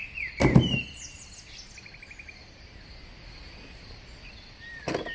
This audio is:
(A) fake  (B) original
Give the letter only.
B